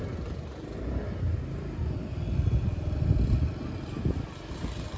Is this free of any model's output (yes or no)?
yes